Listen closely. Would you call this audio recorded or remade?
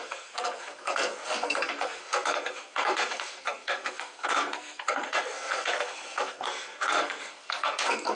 remade